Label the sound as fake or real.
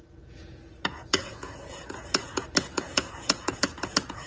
fake